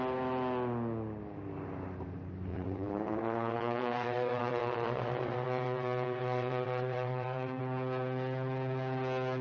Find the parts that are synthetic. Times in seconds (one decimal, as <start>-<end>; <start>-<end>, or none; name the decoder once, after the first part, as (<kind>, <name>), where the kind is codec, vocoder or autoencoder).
2.5-7.6 (vocoder, WaveNeXt)